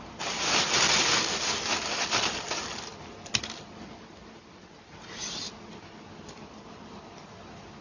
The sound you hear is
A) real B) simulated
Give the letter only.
A